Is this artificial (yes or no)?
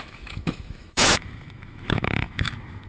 yes